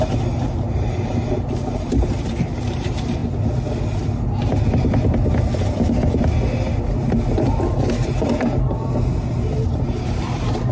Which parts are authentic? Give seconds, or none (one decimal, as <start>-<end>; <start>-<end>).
3.2-7.9